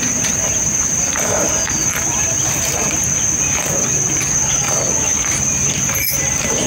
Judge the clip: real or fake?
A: real